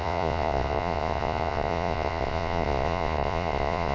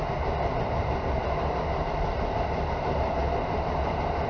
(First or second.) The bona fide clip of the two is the second